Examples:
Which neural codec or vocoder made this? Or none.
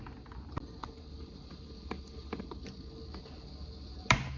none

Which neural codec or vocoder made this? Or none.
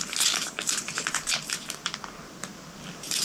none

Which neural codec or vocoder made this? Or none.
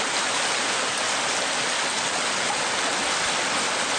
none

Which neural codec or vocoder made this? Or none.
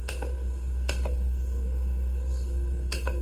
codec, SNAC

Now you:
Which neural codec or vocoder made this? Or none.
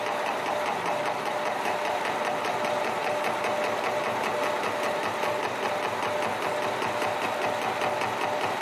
none